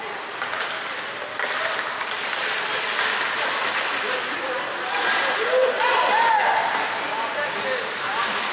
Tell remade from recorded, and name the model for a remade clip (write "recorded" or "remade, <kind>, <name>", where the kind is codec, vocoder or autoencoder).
recorded